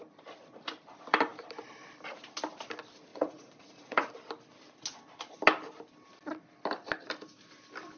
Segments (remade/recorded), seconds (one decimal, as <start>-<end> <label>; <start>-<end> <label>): 0.0-3.1 recorded; 3.1-4.1 remade; 4.1-8.0 recorded